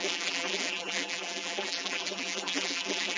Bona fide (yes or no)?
no